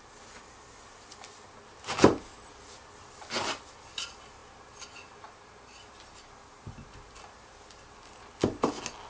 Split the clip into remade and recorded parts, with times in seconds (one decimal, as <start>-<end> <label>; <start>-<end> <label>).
0.0-9.1 recorded